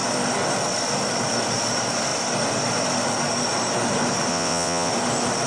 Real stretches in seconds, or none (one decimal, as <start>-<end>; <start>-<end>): 0.0-4.3; 4.9-5.5